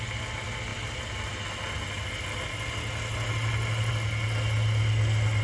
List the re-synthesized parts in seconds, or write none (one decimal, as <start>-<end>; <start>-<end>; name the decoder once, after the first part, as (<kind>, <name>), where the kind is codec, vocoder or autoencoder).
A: none